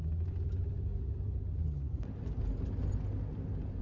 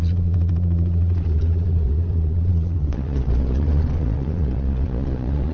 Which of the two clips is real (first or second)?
first